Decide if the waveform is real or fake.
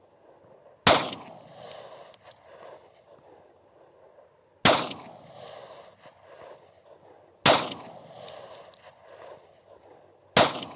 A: real